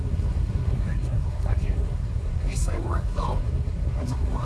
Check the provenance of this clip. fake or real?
fake